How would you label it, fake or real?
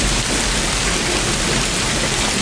real